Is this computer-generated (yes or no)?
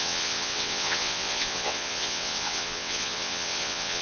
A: yes